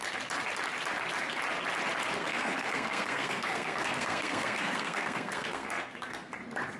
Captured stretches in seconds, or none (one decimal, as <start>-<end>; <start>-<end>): 0.0-2.2; 6.3-6.8

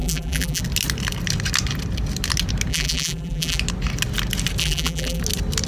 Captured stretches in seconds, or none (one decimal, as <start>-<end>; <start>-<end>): 0.6-2.7; 3.6-4.6; 5.2-5.7

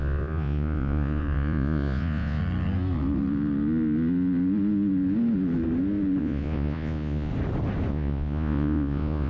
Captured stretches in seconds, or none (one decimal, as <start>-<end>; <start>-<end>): 2.4-6.2; 7.3-7.9

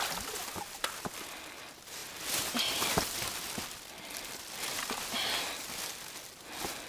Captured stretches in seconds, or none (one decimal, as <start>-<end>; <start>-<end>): 0.0-6.9

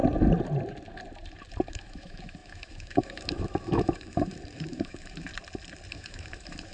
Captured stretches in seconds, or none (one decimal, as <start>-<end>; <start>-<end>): 0.0-1.7; 5.3-5.9

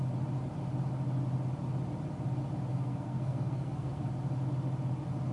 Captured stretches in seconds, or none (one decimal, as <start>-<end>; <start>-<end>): 0.0-2.7; 4.1-5.3

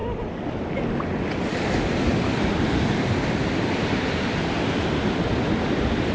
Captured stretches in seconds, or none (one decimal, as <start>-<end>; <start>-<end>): 0.7-2.1; 3.0-6.1